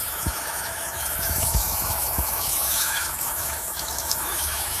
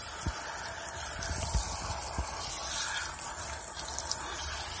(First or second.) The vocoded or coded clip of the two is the first